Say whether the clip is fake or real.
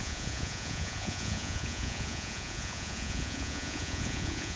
fake